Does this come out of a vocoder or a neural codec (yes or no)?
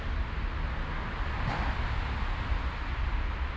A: no